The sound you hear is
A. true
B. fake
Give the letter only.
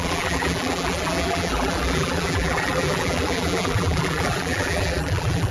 B